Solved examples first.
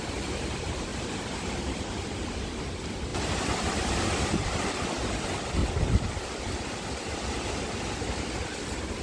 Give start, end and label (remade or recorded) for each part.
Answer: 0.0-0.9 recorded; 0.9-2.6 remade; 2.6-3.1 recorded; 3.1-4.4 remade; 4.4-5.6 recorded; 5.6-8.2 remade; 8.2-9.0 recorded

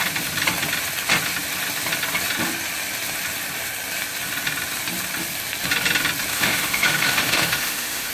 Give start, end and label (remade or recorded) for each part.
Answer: 0.0-6.3 recorded; 6.3-8.1 remade

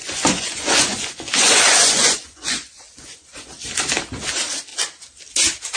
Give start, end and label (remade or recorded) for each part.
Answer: 0.0-3.5 remade; 3.5-5.8 recorded

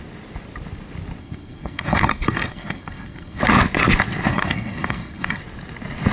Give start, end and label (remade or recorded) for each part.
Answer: 0.0-1.2 recorded; 1.2-3.4 remade; 3.4-4.3 recorded; 4.3-5.4 remade; 5.4-6.1 recorded

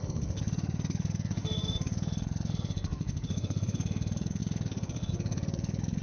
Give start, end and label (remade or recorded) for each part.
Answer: 0.0-6.0 remade

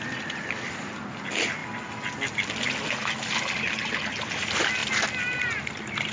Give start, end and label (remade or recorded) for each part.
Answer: 0.0-6.1 recorded